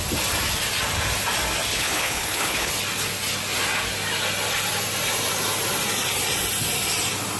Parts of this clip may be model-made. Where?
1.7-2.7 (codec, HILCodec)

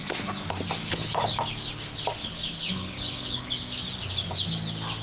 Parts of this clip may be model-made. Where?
0.8-1.4 (codec, HILCodec); 2.2-3.5

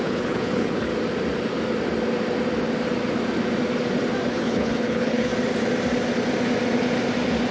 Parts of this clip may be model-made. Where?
0.0-0.9 (codec, HILCodec); 4.3-5.3

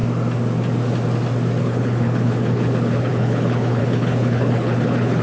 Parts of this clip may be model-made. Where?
1.6-5.2 (codec, HILCodec)

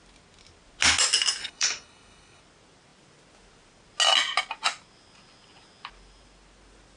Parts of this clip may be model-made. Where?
1.4-2.4 (codec, HILCodec)